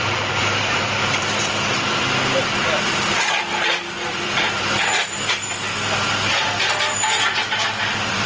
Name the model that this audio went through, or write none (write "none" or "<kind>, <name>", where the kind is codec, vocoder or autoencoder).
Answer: vocoder, BigVGAN v2